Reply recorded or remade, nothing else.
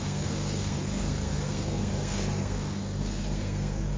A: remade